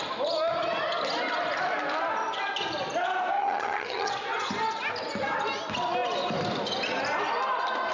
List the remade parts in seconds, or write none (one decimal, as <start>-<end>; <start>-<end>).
3.4-4.1